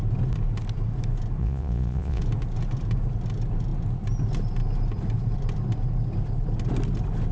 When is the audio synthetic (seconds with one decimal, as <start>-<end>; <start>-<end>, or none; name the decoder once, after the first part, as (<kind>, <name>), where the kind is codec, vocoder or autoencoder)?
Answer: 1.4-2.2 (vocoder, Vocos)